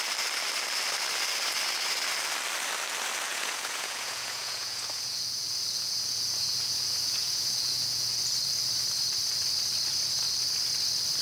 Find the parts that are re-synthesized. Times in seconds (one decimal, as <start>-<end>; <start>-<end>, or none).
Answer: 3.3-8.2